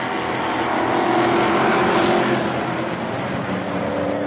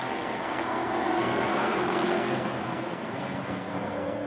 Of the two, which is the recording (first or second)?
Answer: first